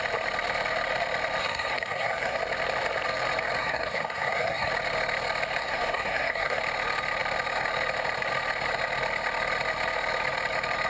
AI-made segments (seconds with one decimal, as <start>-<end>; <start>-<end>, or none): 1.4-2.4; 3.6-4.7; 5.6-6.6